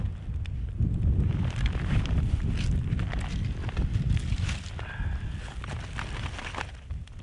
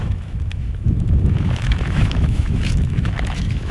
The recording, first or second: first